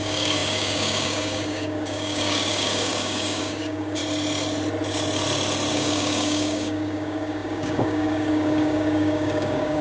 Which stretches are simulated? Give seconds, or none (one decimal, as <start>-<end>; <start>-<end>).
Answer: 0.0-4.0; 5.7-9.8